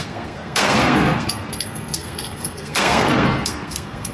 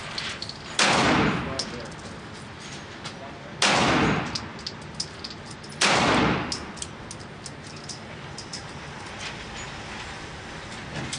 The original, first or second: second